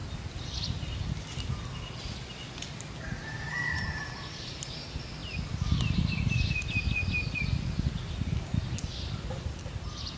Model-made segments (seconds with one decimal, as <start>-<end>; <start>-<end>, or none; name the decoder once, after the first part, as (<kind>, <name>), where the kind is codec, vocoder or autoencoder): none